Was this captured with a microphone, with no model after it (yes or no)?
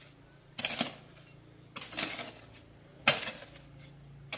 yes